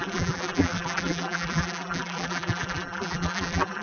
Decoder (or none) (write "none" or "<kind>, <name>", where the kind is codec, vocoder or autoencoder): vocoder, BigVGAN v2